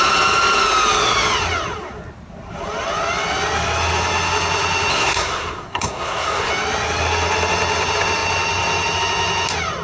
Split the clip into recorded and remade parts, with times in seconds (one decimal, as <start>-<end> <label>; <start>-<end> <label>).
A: 0.0-4.9 recorded; 4.9-6.5 remade; 6.5-9.8 recorded